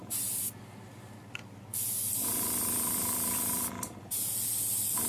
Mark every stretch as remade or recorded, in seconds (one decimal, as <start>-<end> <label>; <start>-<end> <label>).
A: 0.0-1.7 recorded; 1.7-5.1 remade